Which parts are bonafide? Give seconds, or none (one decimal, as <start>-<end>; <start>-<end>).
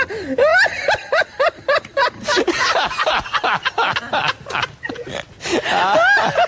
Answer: 0.0-6.5